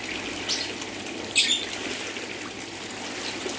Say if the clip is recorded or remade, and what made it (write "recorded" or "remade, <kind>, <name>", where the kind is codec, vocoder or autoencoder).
recorded